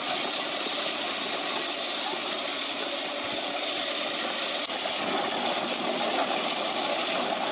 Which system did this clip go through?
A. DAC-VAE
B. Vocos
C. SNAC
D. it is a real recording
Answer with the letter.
D